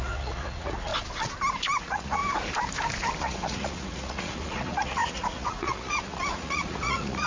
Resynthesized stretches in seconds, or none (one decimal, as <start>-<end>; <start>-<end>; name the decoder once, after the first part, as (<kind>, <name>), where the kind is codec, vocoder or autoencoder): 0.0-0.9 (vocoder, Vocos); 1.8-2.2; 3.2-7.3